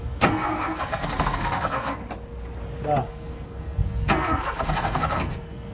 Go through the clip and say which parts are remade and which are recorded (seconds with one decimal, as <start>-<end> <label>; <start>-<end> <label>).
0.0-2.0 remade; 2.0-3.1 recorded; 3.1-5.7 remade